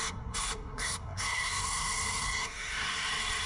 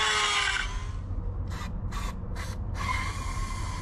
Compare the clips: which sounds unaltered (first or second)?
second